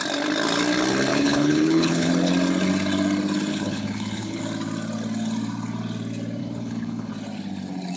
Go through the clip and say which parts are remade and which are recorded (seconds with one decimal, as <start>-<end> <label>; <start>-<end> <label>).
0.0-1.1 recorded; 1.1-2.1 remade; 2.1-3.5 recorded; 3.5-4.4 remade; 4.4-6.4 recorded; 6.4-7.1 remade; 7.1-8.0 recorded